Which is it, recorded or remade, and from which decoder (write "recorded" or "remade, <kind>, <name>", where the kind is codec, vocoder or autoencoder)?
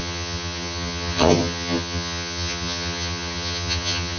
remade, vocoder, HiFi-GAN